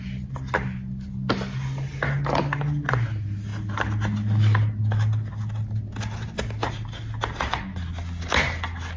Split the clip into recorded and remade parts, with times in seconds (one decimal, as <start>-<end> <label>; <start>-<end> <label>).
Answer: 0.0-9.0 recorded

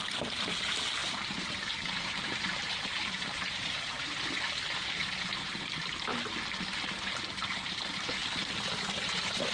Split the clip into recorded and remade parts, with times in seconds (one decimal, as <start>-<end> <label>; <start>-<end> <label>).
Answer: 0.0-6.1 remade; 6.1-7.5 recorded; 7.5-8.2 remade; 8.2-8.8 recorded; 8.8-9.5 remade

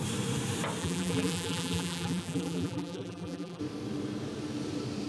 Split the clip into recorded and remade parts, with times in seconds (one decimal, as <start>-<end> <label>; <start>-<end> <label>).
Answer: 0.0-0.8 recorded; 0.8-3.6 remade; 3.6-5.1 recorded

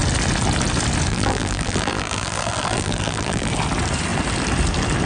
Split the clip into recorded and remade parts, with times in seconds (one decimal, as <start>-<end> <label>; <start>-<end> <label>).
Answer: 0.0-1.1 recorded; 1.1-3.5 remade; 3.5-5.1 recorded

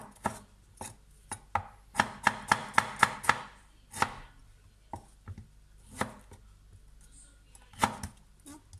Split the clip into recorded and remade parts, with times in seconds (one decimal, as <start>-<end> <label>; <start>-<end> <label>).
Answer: 0.0-8.8 recorded

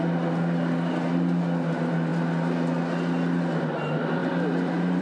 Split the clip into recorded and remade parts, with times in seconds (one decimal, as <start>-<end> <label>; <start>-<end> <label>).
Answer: 0.0-4.2 recorded; 4.2-5.0 remade